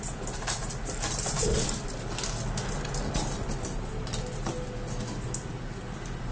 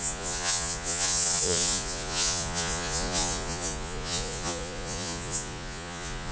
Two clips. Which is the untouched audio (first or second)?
first